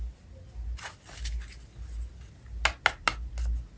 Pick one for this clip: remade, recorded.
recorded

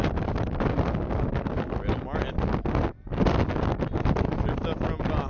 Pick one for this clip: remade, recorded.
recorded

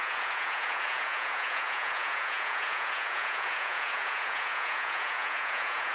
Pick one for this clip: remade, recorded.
remade